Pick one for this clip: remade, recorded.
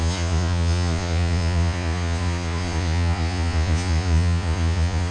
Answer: remade